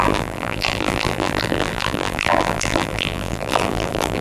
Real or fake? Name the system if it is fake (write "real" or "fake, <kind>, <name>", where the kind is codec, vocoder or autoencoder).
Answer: fake, vocoder, BigVGAN v2